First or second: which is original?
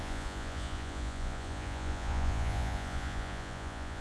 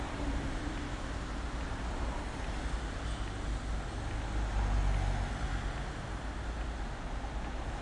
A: second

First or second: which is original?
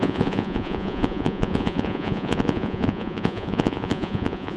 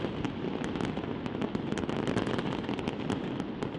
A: second